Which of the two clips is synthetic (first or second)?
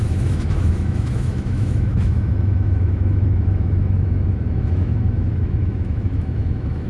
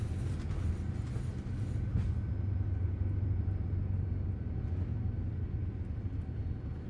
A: first